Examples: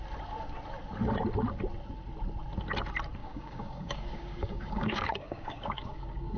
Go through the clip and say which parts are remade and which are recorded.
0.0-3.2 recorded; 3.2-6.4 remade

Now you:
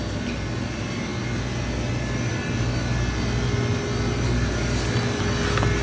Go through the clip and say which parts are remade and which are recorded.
0.0-5.8 recorded

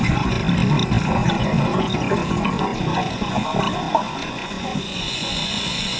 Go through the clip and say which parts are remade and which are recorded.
0.0-0.4 remade; 0.4-1.1 recorded; 1.1-3.5 remade; 3.5-4.0 recorded; 4.0-6.0 remade

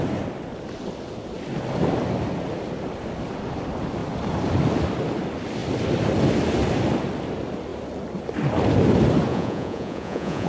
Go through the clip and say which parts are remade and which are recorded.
0.0-9.3 recorded; 9.3-10.5 remade

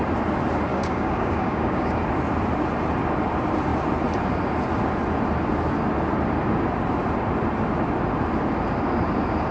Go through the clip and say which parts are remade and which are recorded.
0.0-0.7 recorded; 0.7-2.0 remade; 2.0-9.5 recorded

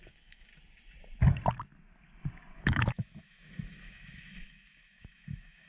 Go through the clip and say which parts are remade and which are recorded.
0.0-0.5 remade; 0.5-2.6 recorded; 2.6-5.7 remade